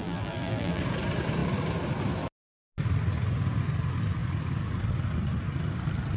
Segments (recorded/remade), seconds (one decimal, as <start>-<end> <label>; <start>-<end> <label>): 0.0-0.8 remade; 0.8-6.2 recorded